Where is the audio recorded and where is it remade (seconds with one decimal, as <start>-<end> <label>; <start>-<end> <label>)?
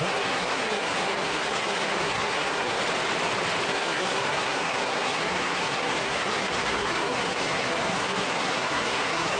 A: 0.0-2.8 remade; 2.8-3.7 recorded; 3.7-9.4 remade